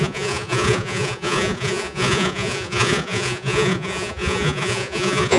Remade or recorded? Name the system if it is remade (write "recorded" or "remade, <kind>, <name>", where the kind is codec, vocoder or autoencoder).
remade, vocoder, Vocos